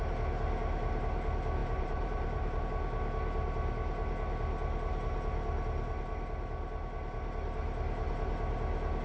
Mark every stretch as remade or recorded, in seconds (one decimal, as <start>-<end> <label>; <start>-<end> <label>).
0.0-1.6 recorded; 1.6-2.6 remade; 2.6-9.0 recorded